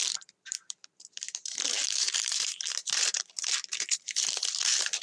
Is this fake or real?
fake